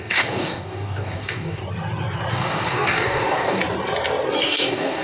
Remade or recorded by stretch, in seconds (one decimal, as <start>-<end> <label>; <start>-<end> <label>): 0.0-1.6 remade; 1.6-2.3 recorded; 2.3-3.6 remade; 3.6-4.4 recorded; 4.4-5.0 remade